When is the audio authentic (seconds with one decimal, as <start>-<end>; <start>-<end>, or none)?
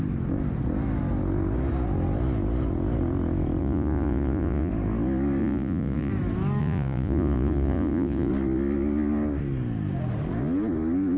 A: 0.0-3.6; 4.7-5.4; 6.1-6.6; 8.3-11.2